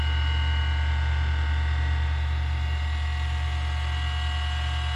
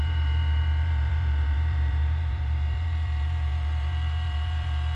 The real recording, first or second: first